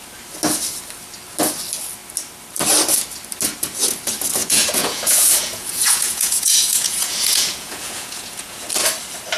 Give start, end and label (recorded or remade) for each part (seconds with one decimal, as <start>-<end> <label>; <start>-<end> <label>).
0.0-4.4 recorded; 4.4-8.7 remade; 8.7-9.4 recorded